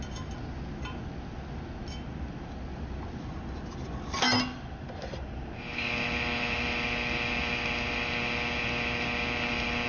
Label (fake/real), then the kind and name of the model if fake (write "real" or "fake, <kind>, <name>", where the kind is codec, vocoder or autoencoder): real